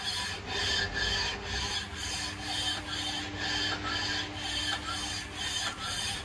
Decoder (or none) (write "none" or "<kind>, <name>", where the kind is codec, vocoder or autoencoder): none